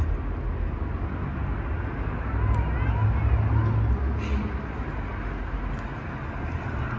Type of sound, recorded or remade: recorded